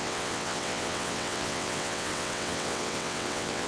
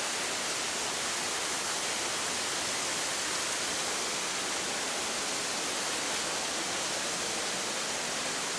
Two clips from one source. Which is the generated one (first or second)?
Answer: first